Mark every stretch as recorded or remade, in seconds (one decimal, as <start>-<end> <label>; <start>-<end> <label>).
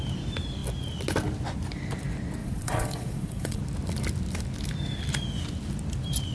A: 0.0-2.4 recorded; 2.4-3.6 remade; 3.6-6.3 recorded